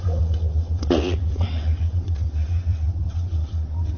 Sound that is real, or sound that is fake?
fake